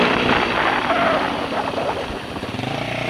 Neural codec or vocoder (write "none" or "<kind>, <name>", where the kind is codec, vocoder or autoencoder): none